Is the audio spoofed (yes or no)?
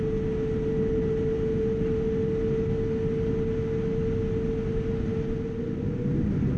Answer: no